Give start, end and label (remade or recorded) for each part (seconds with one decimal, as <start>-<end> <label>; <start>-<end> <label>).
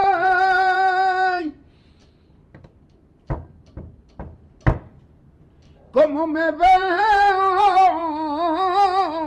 0.0-8.0 remade; 8.0-9.3 recorded